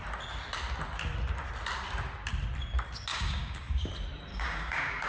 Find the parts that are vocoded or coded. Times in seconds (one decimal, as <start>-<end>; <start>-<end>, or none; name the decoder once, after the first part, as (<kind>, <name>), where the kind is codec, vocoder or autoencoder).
3.1-3.9 (codec, DAC); 4.3-5.1